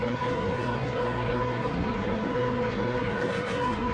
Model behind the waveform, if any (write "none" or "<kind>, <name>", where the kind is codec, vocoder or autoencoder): codec, SNAC